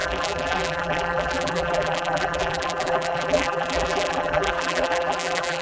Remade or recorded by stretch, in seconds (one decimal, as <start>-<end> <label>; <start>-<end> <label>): 0.0-5.6 remade